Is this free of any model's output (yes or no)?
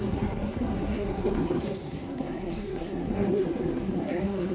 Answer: no